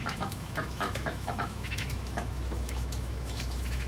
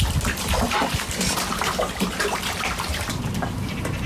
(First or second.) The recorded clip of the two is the second